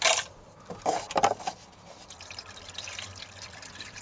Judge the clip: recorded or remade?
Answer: remade